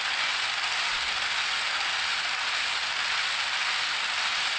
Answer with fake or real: real